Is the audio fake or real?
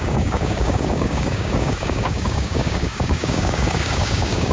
fake